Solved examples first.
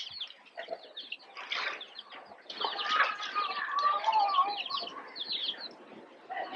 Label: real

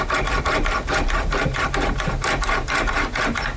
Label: fake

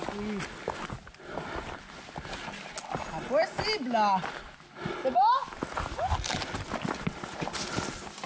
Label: real